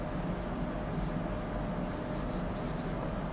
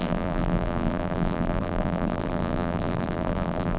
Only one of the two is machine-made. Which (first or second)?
second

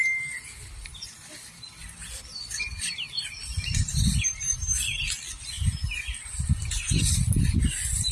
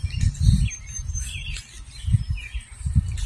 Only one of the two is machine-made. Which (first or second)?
first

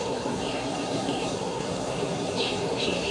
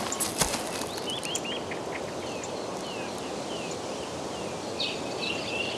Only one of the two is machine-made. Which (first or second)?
first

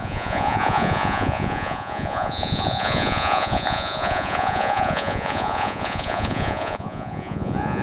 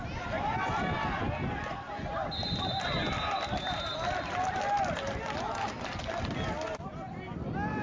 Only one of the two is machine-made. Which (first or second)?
first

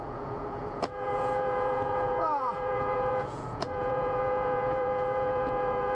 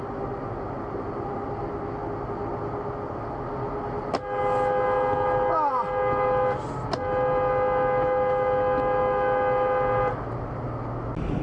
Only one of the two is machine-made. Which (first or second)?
first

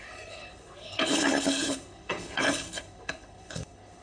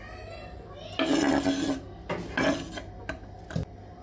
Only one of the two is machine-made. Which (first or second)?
first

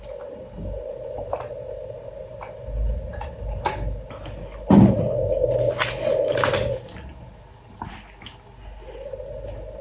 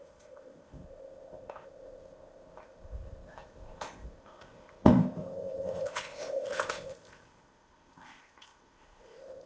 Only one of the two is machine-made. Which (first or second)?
second